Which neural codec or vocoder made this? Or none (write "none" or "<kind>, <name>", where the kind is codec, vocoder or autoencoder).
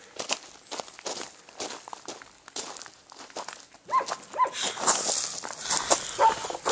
none